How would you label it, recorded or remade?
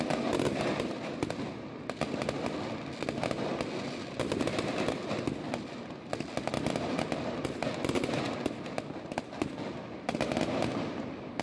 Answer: recorded